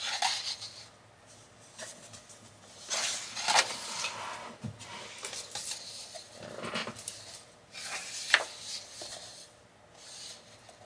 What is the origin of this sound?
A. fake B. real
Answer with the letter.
B